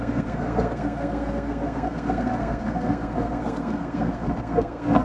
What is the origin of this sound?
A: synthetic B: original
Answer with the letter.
A